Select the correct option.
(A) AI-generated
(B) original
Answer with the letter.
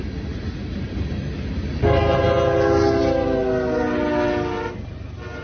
B